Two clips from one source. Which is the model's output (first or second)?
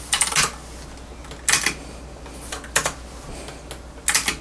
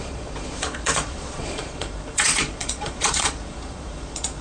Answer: second